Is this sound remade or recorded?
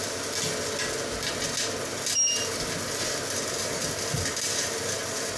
recorded